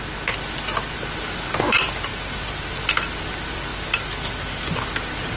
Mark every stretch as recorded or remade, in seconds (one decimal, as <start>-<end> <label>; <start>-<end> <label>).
0.0-5.4 recorded